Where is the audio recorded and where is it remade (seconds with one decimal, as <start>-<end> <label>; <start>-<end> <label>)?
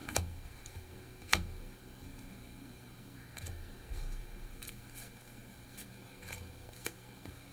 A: 0.0-7.5 remade